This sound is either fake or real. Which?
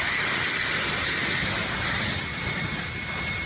real